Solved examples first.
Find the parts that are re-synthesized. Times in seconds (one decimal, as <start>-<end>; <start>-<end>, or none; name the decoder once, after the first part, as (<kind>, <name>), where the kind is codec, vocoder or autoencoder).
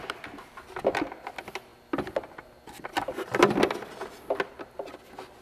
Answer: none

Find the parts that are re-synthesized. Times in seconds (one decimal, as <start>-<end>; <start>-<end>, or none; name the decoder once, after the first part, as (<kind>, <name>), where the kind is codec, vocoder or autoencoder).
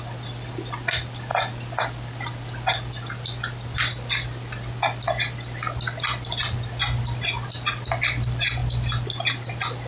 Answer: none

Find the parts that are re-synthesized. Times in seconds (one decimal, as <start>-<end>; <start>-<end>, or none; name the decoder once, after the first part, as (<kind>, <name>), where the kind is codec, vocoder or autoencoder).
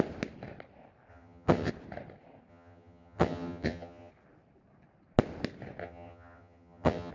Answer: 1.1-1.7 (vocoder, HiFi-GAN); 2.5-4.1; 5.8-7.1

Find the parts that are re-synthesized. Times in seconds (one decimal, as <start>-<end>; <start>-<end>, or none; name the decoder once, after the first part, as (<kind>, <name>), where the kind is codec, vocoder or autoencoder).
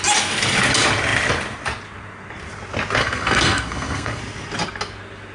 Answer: 3.0-4.2 (codec, SNAC)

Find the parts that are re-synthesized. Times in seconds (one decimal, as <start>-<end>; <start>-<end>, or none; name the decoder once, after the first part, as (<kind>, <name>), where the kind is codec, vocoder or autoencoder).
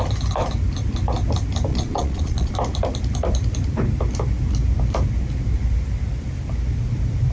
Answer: 1.7-2.5 (vocoder, Vocos)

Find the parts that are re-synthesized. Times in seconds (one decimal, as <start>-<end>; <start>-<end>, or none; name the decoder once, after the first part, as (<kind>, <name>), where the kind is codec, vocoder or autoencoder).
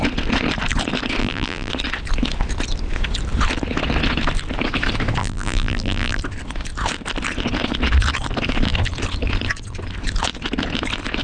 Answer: 1.2-1.7 (vocoder, BigVGAN v2); 5.2-6.2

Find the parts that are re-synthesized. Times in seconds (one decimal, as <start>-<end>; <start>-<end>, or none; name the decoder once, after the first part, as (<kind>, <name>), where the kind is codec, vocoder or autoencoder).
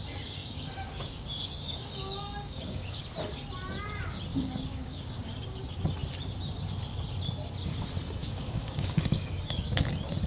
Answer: 0.4-3.0 (codec, DAC); 4.3-5.3; 8.2-9.9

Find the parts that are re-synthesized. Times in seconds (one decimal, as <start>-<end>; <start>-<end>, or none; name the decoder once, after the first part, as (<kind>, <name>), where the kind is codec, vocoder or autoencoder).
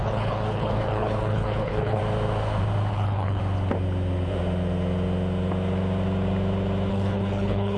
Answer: 0.0-2.0 (codec, HILCodec); 2.9-3.4; 6.9-7.8